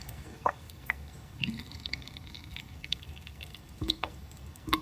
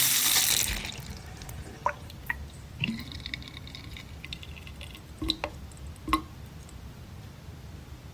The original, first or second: second